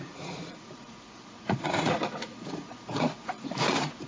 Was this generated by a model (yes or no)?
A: yes